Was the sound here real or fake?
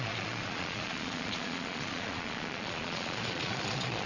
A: fake